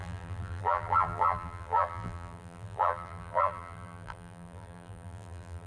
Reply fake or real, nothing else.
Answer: fake